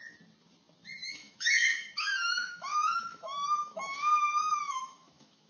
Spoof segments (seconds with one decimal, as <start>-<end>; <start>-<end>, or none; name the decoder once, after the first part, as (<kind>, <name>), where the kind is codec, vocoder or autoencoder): 1.1-5.5 (autoencoder, DAC-VAE)